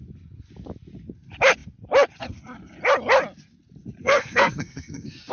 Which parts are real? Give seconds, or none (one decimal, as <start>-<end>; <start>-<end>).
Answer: 0.0-4.0